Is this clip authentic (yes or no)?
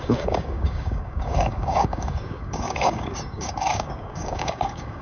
no